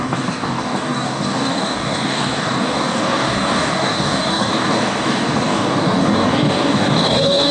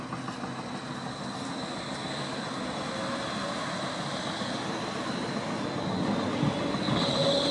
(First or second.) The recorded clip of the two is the second